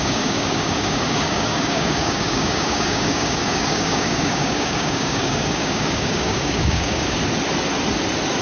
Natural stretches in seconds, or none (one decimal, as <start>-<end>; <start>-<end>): 7.2-8.4